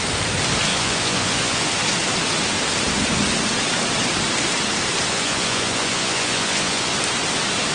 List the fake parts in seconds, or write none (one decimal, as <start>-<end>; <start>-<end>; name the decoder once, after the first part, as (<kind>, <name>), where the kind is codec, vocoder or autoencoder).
0.7-1.7 (vocoder, Vocos); 5.1-6.9